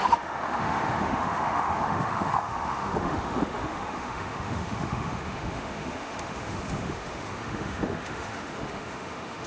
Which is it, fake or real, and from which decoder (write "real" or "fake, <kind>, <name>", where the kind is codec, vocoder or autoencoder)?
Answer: fake, autoencoder, DAC-VAE